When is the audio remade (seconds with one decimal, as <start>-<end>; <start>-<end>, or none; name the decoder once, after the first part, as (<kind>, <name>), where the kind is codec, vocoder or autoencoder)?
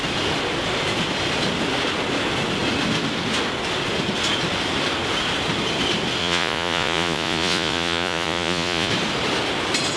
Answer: 6.2-8.9 (vocoder, Vocos)